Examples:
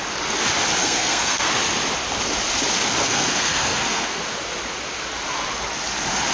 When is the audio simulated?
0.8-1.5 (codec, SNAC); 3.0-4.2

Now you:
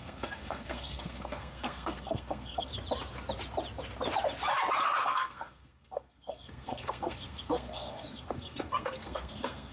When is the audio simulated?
0.0-2.7 (codec, SNAC); 5.1-9.7

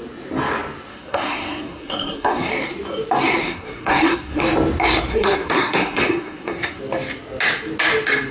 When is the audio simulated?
0.9-2.5 (codec, SNAC); 3.4-4.4; 5.1-6.8

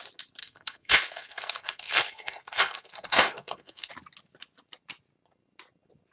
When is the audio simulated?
0.4-3.9 (codec, SNAC)

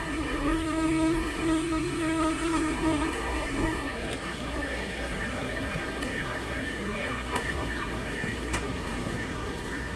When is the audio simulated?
0.0-10.0 (codec, SNAC)

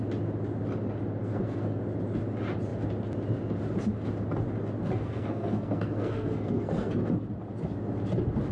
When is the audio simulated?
1.2-1.8 (codec, SNAC); 4.8-7.0

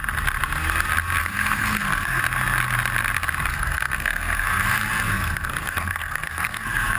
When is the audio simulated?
1.2-2.2 (codec, SNAC); 3.5-7.0

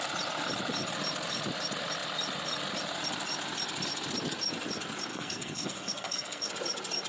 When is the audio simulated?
5.1-6.5 (codec, SNAC)